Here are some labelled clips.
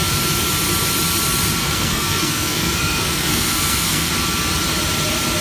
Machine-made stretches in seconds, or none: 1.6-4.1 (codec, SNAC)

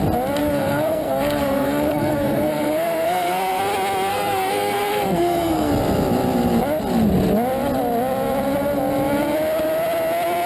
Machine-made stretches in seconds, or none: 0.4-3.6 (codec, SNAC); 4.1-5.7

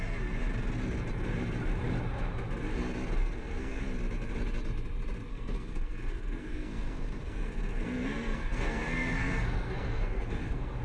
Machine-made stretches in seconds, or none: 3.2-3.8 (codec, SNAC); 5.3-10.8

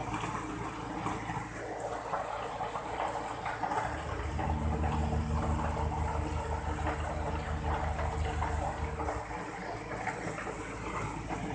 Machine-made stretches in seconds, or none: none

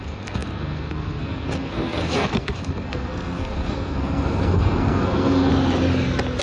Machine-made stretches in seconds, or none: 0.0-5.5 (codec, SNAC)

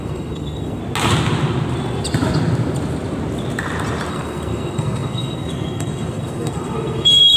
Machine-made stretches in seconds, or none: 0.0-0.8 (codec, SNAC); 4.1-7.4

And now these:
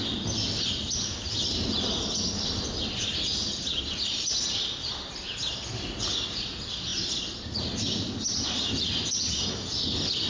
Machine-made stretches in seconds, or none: none